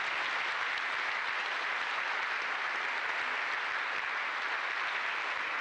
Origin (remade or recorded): recorded